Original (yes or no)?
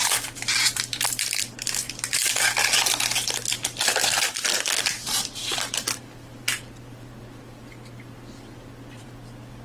no